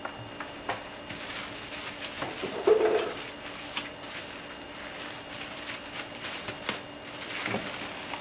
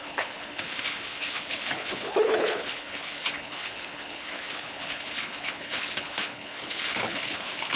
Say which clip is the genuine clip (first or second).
first